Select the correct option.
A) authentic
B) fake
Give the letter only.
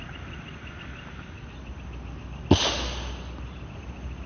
A